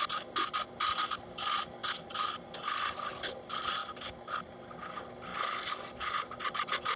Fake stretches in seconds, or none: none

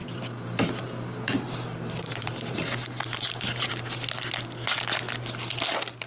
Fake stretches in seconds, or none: 0.0-3.7 (vocoder, BigVGAN v2)